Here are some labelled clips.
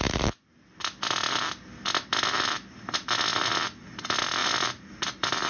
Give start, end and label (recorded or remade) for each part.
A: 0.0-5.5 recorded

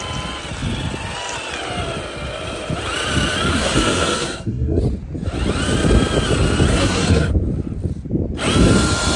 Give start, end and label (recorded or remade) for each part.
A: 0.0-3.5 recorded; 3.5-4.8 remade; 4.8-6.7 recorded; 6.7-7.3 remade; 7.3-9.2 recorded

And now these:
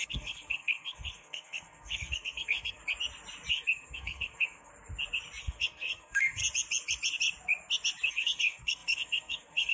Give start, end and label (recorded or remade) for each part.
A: 0.0-2.8 remade; 2.8-3.5 recorded; 3.5-4.7 remade; 4.7-5.4 recorded; 5.4-6.4 remade; 6.4-8.1 recorded; 8.1-9.7 remade

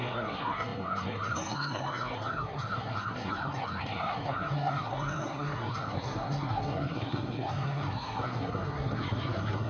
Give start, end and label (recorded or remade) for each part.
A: 0.0-9.7 remade

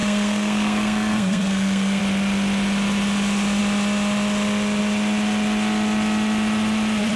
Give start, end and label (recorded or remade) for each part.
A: 0.0-2.0 remade; 2.0-7.2 recorded

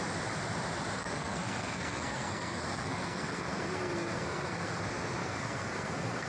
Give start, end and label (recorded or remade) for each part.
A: 0.0-1.0 recorded; 1.0-4.8 remade; 4.8-5.2 recorded; 5.2-6.3 remade

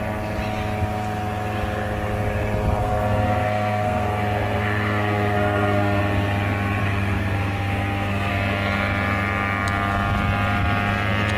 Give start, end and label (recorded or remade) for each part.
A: 0.0-2.8 recorded; 2.8-6.0 remade; 6.0-6.8 recorded; 6.8-8.3 remade; 8.3-11.4 recorded

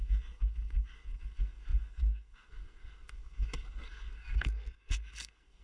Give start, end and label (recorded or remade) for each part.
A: 0.0-5.6 remade